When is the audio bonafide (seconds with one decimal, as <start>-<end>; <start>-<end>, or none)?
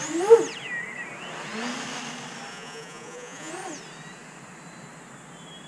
0.0-2.5; 3.5-5.7